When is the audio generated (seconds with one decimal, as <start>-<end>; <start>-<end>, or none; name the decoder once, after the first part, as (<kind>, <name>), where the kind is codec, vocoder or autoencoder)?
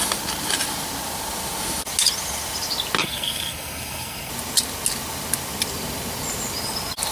3.0-4.3 (codec, SNAC)